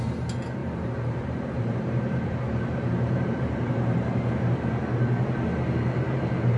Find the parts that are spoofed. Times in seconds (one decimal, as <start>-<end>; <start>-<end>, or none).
0.6-4.3